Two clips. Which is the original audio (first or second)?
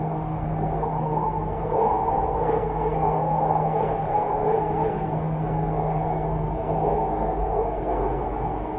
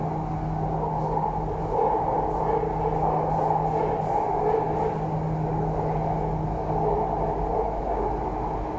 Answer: second